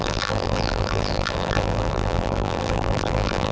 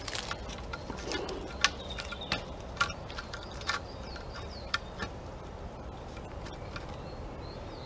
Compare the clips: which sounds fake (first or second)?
first